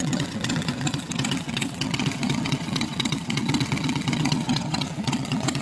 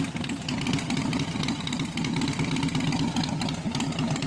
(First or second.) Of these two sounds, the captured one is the second